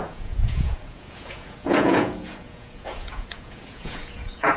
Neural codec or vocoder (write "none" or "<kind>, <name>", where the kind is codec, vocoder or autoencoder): vocoder, Vocos